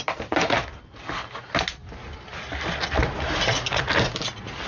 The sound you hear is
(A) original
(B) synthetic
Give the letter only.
A